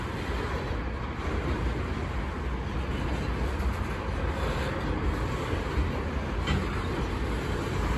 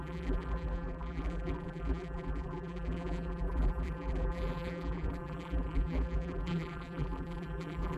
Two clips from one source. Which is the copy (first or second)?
second